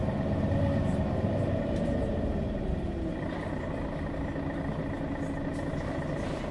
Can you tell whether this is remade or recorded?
recorded